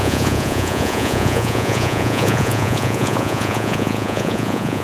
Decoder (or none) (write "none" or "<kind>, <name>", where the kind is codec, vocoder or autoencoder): vocoder, Vocos